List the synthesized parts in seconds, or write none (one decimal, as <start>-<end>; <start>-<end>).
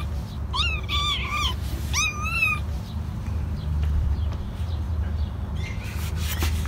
2.7-5.4